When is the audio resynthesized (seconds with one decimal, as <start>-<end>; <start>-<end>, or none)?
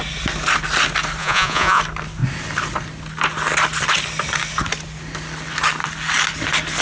1.2-1.8